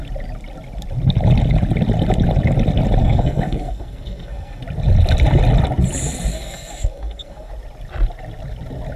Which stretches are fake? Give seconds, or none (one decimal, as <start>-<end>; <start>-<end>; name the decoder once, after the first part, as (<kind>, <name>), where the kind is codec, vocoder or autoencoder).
3.0-4.6 (codec, SNAC); 6.3-7.5